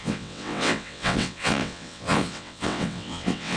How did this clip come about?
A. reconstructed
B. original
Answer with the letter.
A